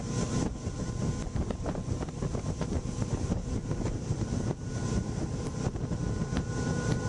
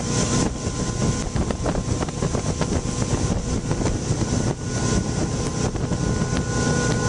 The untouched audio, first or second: second